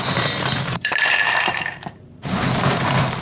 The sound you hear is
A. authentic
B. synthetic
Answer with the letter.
B